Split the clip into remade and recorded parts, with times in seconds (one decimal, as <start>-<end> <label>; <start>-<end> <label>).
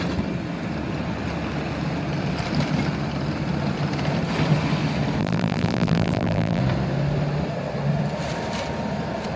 0.0-5.2 recorded; 5.2-6.6 remade; 6.6-9.4 recorded